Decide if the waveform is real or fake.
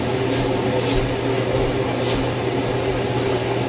real